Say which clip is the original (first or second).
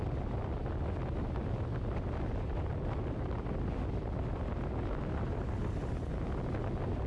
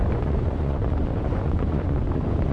first